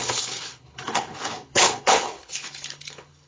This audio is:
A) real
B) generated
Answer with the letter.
B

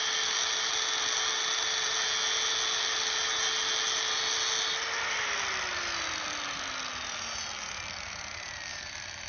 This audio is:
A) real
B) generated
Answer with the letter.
A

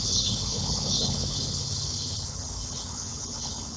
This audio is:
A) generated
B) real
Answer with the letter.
A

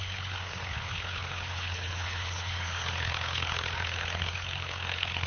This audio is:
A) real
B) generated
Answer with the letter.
B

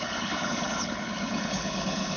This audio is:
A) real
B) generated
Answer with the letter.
B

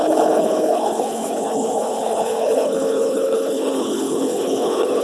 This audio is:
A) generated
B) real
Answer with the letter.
A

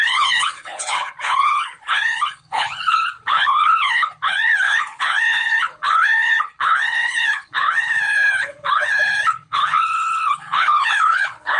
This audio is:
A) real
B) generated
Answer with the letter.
B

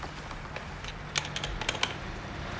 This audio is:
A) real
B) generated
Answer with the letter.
A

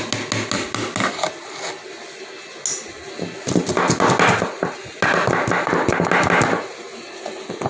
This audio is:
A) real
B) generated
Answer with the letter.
A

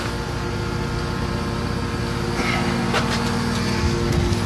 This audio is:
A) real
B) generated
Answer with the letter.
A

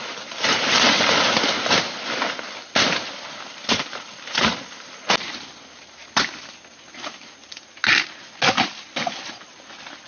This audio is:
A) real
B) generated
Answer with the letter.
A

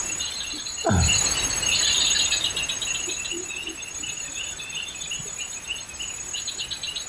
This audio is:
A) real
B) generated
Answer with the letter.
A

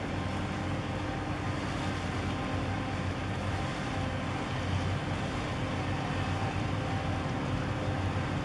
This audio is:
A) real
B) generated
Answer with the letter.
A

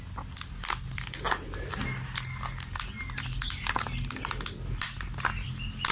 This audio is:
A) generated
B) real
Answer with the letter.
B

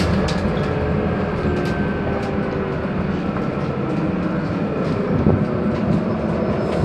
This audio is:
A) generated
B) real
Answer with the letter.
B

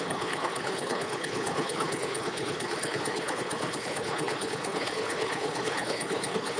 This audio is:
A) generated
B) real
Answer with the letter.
A